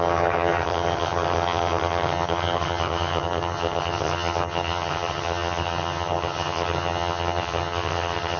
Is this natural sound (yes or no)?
no